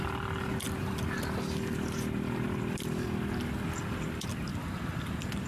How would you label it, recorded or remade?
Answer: recorded